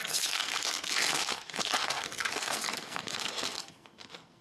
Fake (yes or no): yes